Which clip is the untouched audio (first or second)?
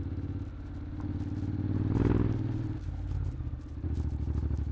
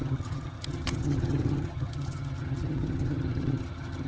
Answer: first